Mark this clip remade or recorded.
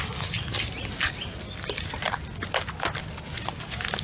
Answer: recorded